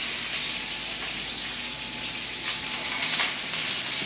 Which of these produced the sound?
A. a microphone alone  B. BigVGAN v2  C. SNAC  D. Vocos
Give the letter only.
A